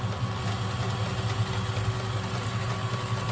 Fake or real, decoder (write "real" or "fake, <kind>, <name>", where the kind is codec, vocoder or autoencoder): real